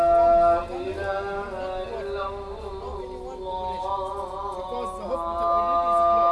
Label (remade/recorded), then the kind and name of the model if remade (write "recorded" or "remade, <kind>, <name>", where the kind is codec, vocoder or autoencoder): recorded